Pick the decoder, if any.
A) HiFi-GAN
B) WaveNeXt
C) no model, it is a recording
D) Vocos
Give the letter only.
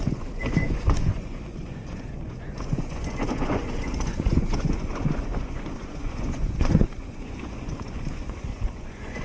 D